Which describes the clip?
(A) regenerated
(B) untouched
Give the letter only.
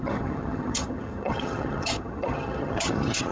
A